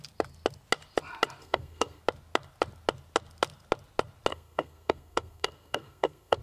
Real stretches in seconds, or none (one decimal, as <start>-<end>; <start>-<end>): 0.0-1.4; 2.0-4.3